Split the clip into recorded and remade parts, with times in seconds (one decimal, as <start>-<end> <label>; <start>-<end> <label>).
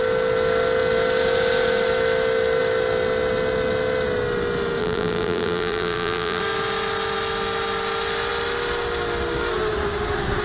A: 0.0-4.8 recorded; 4.8-6.4 remade; 6.4-10.4 recorded